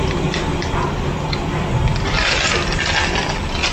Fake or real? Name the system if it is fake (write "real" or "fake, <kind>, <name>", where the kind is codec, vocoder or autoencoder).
real